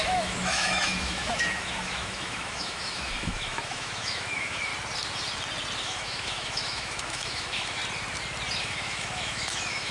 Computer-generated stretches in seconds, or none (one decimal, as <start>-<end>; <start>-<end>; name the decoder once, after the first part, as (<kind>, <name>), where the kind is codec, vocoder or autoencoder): 0.0-4.7 (autoencoder, DAC-VAE); 5.8-7.8; 8.6-9.9